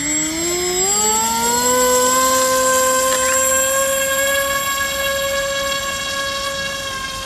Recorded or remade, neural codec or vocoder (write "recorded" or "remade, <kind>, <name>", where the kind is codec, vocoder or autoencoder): recorded